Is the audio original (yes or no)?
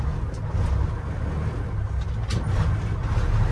yes